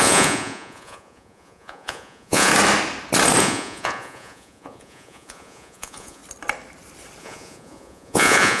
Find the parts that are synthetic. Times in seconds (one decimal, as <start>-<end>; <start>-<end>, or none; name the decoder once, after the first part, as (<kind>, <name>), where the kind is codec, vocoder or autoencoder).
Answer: 0.0-2.5 (vocoder, Vocos); 3.4-6.2; 7.2-8.6